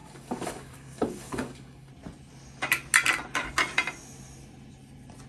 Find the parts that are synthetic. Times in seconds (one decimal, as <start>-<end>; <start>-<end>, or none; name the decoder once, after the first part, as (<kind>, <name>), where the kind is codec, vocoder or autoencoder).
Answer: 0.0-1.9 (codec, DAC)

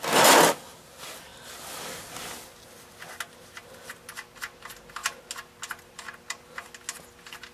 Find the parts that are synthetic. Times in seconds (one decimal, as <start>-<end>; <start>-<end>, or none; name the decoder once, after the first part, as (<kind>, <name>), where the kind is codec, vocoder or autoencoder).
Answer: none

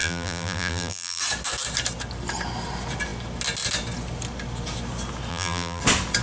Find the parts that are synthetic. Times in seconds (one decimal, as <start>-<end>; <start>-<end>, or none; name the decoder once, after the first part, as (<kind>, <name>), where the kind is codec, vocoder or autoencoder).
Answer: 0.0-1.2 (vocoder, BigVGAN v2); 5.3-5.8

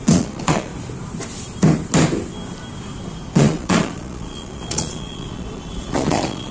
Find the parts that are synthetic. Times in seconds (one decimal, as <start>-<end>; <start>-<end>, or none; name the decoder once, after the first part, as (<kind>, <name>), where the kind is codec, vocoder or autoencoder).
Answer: 0.0-0.7 (vocoder, Vocos); 3.3-6.5